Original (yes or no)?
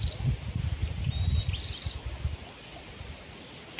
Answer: yes